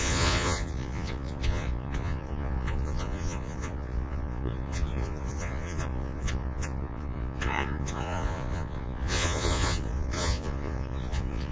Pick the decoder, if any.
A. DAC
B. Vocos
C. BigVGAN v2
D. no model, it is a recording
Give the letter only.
B